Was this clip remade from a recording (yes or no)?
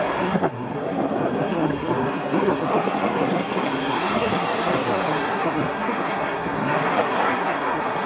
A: yes